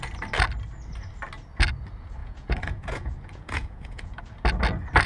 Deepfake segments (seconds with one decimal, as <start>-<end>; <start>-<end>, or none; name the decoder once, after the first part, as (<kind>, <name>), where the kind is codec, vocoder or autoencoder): 2.2-4.2 (vocoder, Vocos)